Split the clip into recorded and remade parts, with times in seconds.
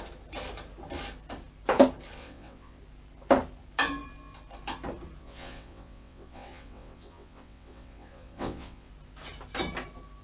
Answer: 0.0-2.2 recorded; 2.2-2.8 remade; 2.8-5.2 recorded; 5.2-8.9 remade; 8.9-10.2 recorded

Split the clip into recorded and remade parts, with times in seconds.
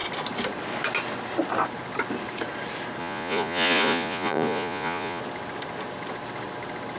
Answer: 0.0-3.0 recorded; 3.0-5.2 remade; 5.2-7.0 recorded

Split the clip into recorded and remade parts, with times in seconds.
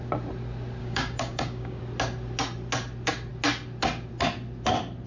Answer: 0.0-0.8 recorded; 0.8-1.8 remade; 1.8-5.1 recorded